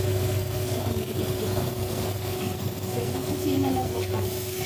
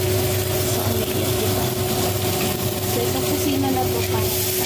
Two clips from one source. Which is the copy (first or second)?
first